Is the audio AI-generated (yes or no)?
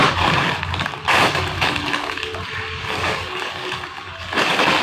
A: yes